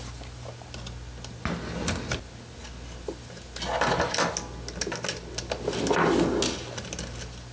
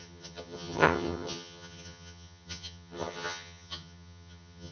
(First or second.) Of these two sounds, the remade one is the second